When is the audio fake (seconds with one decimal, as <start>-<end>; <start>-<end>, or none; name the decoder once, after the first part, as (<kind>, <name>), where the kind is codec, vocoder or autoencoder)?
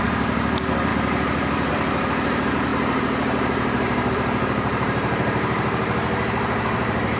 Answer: 0.0-7.2 (vocoder, BigVGAN v2)